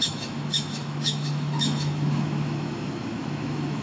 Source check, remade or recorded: remade